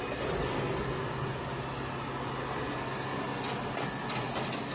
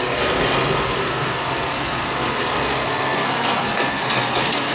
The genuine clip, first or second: first